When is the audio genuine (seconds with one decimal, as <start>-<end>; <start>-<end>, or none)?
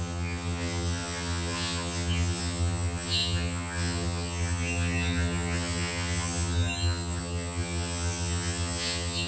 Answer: none